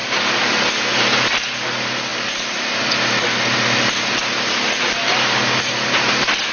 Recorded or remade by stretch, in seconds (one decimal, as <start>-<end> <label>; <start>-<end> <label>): 0.0-2.1 recorded; 2.1-4.1 remade; 4.1-6.5 recorded